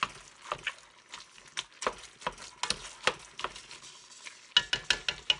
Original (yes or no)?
yes